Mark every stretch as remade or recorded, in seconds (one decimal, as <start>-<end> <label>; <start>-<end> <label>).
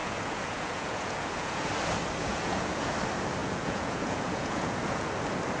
0.0-1.7 remade; 1.7-2.2 recorded; 2.2-2.9 remade; 2.9-3.4 recorded; 3.4-5.1 remade; 5.1-5.6 recorded